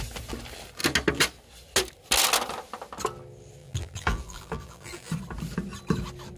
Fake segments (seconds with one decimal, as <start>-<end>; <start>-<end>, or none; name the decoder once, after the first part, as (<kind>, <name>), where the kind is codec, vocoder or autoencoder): 3.6-5.1 (vocoder, BigVGAN v2)